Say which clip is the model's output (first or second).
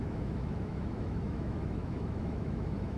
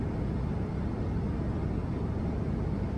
first